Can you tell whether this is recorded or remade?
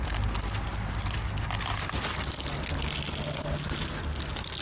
recorded